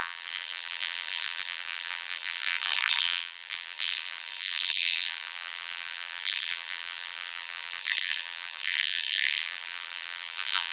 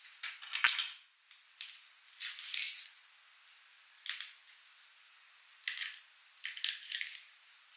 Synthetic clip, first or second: first